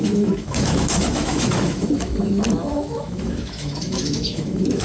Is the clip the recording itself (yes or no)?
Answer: no